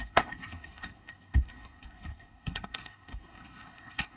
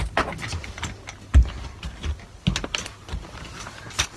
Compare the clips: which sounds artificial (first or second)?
first